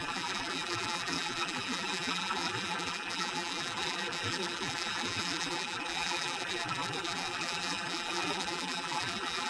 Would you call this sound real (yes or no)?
no